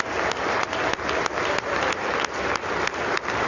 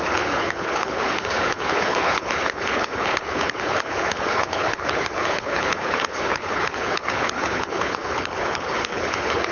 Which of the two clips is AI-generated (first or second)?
second